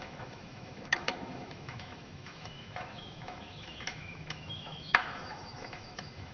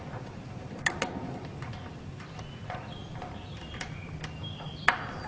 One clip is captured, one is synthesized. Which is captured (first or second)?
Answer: second